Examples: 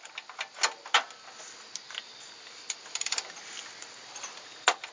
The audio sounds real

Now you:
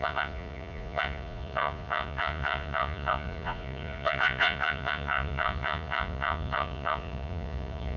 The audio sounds fake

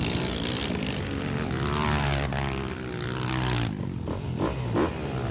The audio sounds real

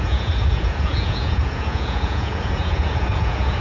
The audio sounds fake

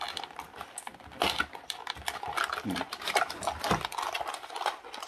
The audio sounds real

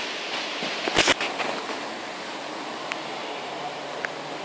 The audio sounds real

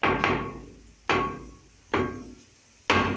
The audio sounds real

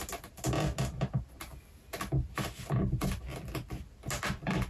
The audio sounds real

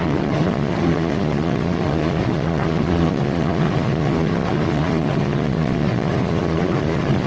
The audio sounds fake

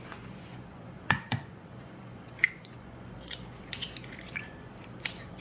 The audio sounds fake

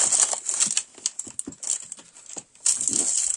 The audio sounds real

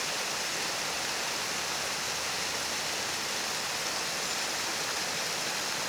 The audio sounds real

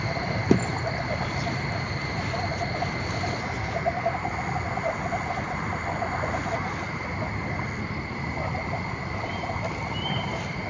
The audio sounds real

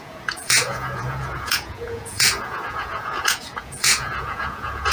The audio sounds fake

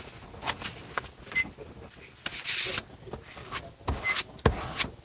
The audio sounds real